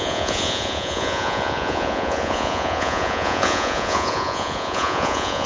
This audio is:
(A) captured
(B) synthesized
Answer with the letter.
B